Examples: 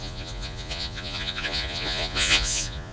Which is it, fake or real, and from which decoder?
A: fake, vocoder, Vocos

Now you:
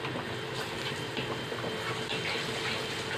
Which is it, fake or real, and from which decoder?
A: real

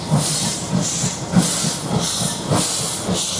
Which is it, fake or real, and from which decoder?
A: real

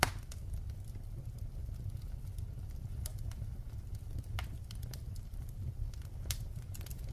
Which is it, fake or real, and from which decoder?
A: real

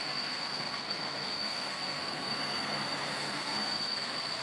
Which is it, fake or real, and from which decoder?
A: fake, codec, SNAC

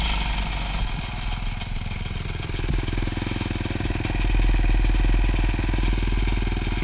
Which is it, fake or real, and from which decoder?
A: real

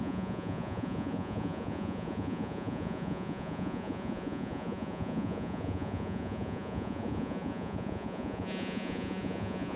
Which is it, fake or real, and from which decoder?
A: fake, vocoder, Vocos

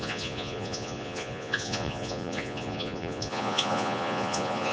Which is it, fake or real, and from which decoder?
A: fake, vocoder, Vocos